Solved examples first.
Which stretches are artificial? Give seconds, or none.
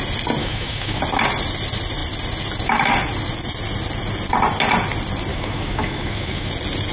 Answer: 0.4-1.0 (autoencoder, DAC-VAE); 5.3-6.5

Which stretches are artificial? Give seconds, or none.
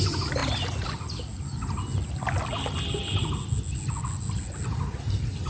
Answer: none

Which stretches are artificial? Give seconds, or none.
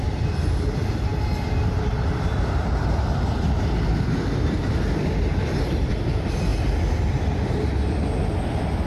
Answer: none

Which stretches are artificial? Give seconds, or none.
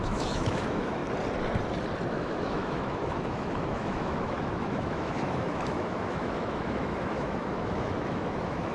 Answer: 0.0-1.0 (autoencoder, DAC-VAE); 2.1-8.7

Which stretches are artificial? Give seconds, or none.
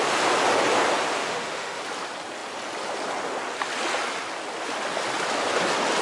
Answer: 1.2-1.8 (autoencoder, DAC-VAE)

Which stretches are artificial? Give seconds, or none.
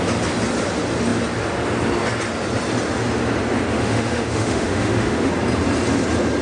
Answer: 3.7-5.3 (autoencoder, DAC-VAE)